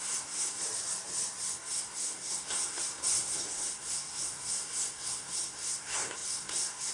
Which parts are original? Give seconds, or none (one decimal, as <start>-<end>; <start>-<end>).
0.6-1.4